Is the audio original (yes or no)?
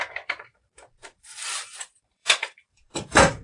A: no